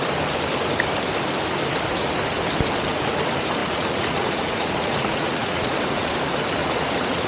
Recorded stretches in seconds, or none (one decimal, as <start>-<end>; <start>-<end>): 0.0-3.6; 6.1-6.6